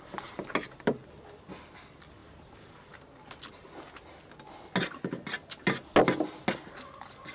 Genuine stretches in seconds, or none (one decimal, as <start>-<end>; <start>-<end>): 0.0-7.3